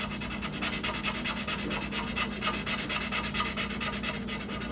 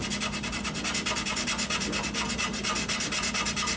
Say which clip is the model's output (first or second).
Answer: second